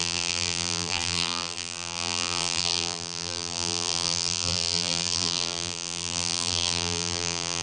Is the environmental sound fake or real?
fake